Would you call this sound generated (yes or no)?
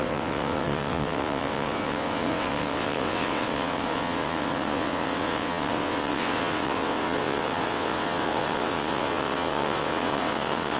yes